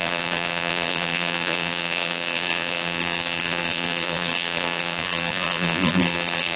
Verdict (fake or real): fake